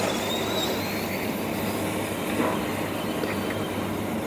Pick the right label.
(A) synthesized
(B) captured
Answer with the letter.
B